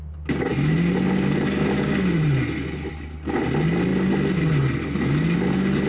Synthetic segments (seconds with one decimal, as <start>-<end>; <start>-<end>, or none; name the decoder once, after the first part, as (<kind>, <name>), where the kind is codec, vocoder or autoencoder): none